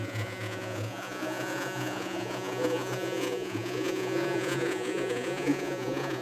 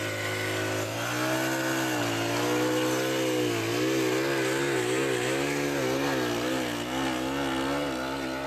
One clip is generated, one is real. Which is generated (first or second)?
first